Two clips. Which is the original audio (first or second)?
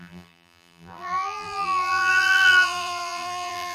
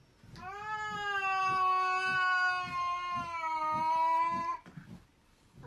second